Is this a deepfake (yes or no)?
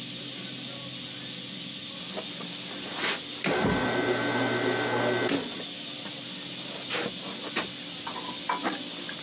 no